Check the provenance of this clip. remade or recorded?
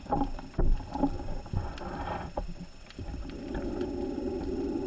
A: recorded